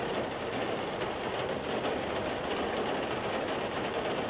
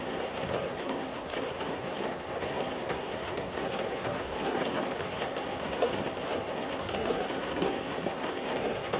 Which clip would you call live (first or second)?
first